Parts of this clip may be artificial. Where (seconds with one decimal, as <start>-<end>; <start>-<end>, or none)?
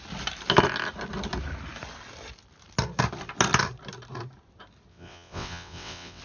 4.9-6.2